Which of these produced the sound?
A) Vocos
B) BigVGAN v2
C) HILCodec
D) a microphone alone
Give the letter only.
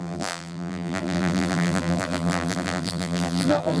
B